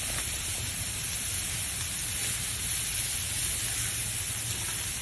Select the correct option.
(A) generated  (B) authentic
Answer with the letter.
B